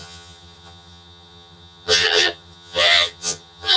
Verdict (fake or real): fake